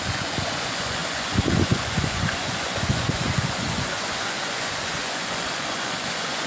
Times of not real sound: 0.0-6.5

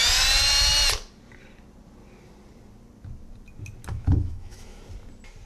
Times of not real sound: 3.9-4.8

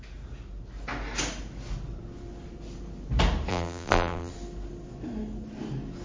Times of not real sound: 3.5-4.3

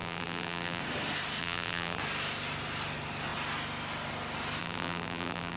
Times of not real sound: 0.0-0.8; 1.4-2.0; 4.6-5.6

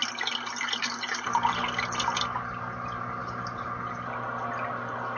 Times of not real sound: none

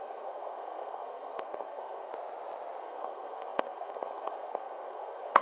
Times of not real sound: 0.0-2.1; 2.8-5.4

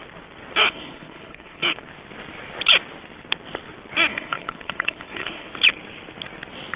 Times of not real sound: 0.6-1.8; 4.1-5.5

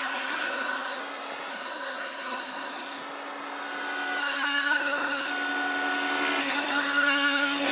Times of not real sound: 0.0-1.0; 1.5-3.0; 4.2-5.3; 6.4-7.7